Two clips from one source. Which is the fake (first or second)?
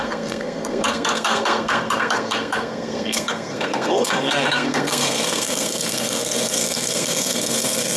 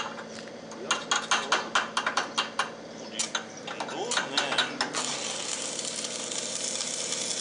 first